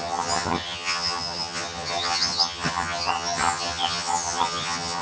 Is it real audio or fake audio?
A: fake